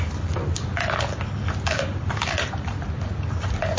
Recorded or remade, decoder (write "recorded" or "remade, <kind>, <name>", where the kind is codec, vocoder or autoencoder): recorded